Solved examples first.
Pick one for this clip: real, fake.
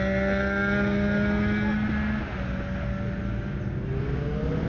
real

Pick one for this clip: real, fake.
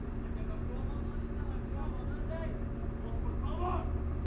real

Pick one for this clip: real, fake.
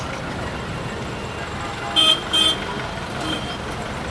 real